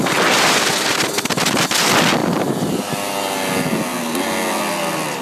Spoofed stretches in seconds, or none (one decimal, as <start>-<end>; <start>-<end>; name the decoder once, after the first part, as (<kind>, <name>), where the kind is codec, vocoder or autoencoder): 2.2-2.9 (vocoder, BigVGAN v2)